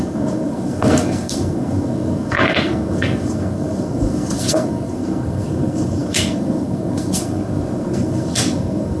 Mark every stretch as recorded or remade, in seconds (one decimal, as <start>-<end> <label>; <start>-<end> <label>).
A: 0.0-9.0 remade